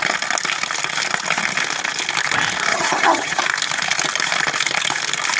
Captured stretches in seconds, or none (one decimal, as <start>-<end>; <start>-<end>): 0.0-2.7; 3.4-5.4